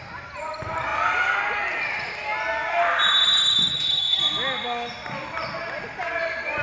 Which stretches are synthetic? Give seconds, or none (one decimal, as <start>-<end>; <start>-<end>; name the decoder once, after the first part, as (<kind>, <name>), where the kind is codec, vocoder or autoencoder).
3.7-4.2 (vocoder, HiFi-GAN)

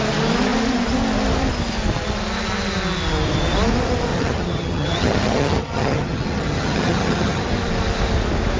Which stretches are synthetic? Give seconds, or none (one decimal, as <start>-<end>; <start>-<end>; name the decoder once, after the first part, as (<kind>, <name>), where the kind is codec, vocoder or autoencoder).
4.1-7.4 (vocoder, HiFi-GAN)

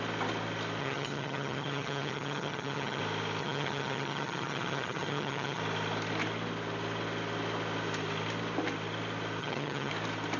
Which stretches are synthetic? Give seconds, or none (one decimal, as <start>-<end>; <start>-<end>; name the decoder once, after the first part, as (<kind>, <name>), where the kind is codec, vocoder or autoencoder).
0.8-3.0 (vocoder, HiFi-GAN); 3.4-5.6; 9.4-9.9

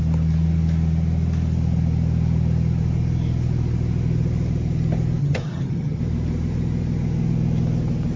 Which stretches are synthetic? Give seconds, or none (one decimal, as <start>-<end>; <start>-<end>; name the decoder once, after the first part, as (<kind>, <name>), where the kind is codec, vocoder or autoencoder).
5.2-6.0 (vocoder, HiFi-GAN)

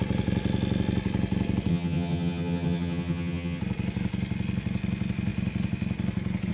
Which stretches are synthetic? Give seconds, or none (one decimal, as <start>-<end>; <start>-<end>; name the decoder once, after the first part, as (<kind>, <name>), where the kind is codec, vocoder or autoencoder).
1.7-3.6 (vocoder, HiFi-GAN)

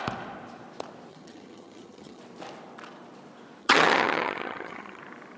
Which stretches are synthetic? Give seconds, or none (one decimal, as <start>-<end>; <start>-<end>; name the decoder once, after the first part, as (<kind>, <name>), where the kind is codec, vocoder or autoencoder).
1.1-2.2 (vocoder, HiFi-GAN); 3.6-5.0

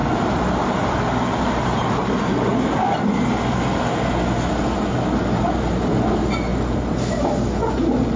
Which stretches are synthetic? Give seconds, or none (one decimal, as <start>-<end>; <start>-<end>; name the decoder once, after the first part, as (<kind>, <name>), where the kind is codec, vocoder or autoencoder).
none